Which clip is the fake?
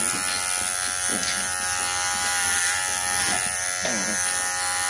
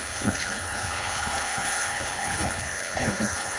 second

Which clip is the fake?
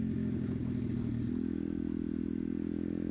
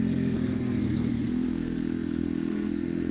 second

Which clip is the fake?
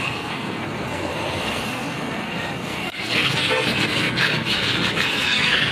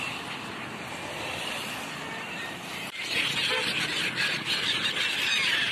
first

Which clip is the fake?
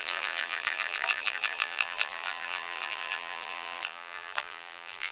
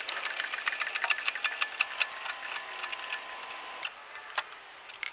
first